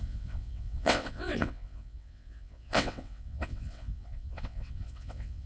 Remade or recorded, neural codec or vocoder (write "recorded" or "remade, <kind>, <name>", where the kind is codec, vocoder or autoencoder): remade, vocoder, WaveNeXt